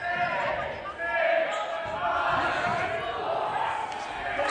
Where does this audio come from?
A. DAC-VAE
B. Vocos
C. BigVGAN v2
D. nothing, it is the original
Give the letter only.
D